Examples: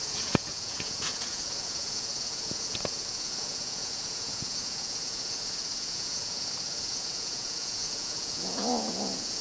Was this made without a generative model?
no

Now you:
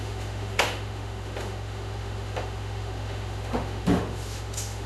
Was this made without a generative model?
no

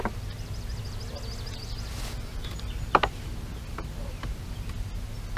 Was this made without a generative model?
yes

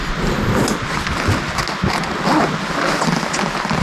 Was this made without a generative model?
yes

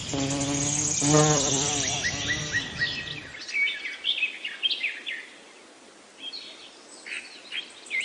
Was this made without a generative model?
yes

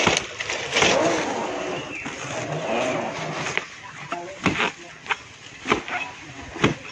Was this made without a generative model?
yes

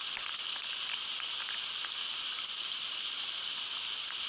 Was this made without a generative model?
yes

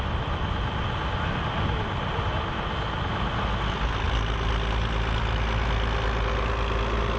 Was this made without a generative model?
yes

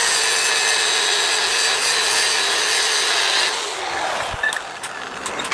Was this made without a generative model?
yes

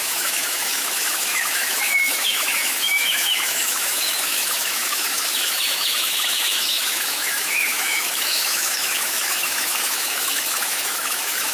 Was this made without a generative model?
no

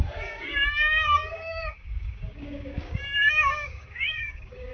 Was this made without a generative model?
no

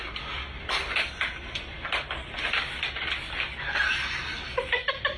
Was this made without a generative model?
yes